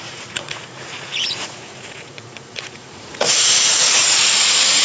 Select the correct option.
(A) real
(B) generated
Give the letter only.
B